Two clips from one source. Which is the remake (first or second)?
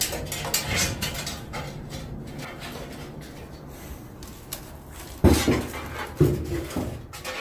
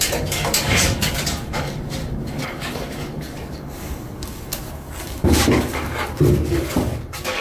second